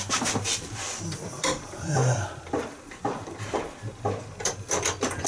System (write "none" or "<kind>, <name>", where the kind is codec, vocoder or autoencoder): vocoder, BigVGAN v2